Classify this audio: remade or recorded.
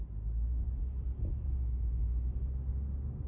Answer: recorded